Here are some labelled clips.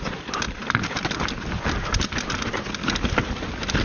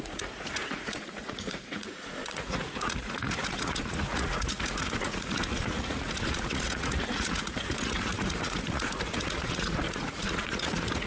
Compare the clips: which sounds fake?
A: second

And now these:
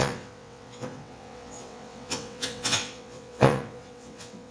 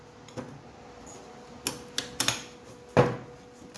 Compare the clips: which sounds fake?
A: first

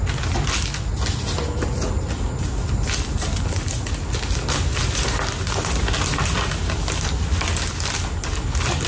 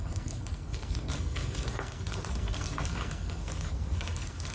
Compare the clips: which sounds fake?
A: second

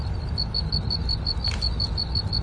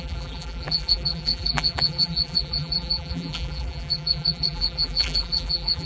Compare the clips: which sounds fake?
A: second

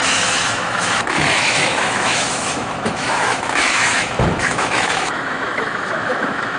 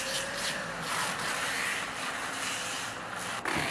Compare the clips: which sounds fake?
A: first